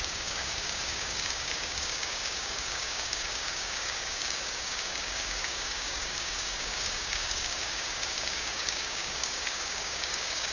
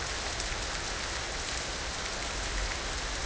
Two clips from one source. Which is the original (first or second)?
second